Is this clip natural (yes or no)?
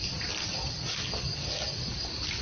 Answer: no